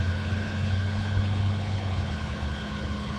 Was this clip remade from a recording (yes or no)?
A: yes